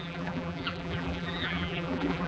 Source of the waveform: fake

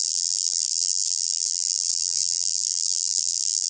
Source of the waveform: fake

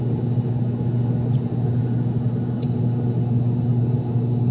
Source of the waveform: real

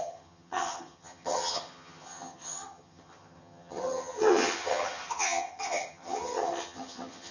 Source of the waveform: fake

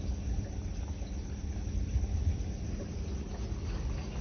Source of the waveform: real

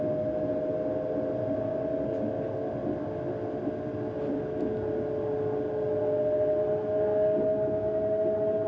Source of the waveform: real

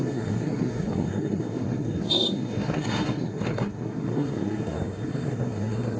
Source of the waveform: fake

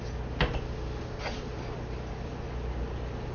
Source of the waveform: real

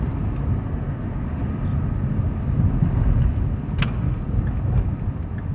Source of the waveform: fake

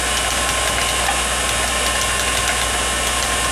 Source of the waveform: real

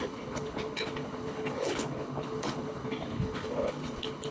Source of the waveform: fake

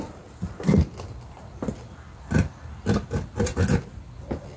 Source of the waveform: real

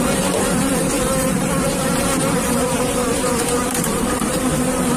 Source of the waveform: fake